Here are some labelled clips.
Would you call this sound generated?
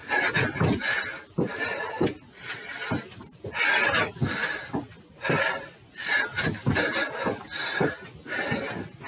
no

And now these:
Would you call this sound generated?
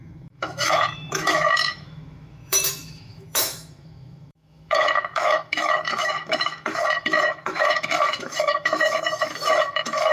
yes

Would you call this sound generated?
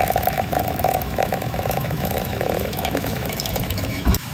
yes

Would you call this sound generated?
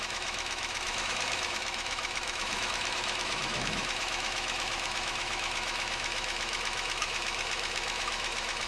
yes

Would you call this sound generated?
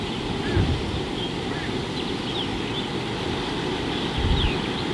no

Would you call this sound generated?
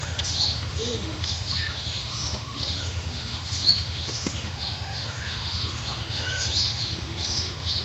yes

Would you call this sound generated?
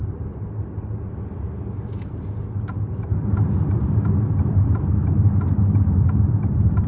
no